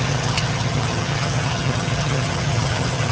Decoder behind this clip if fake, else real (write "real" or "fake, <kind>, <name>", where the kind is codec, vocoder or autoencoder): fake, vocoder, HiFi-GAN